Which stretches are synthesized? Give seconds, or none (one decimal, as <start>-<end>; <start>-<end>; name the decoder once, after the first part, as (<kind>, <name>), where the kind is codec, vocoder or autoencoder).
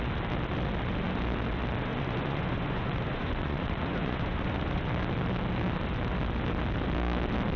1.9-4.8 (vocoder, Vocos)